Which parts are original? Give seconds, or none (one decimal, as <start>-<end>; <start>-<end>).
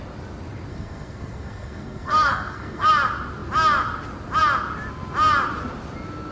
0.0-0.7; 2.9-6.3